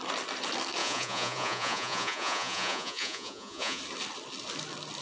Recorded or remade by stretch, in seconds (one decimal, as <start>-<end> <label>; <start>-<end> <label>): 0.0-0.8 recorded; 0.8-3.8 remade; 3.8-5.0 recorded